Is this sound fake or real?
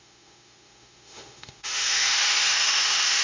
fake